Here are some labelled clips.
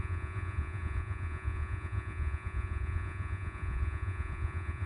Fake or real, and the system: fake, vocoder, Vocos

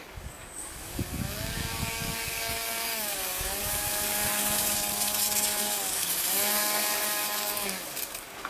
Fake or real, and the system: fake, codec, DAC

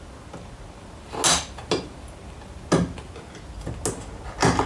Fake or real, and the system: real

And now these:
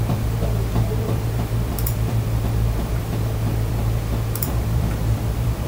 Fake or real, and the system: fake, vocoder, BigVGAN v2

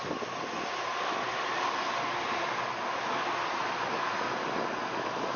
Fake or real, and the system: real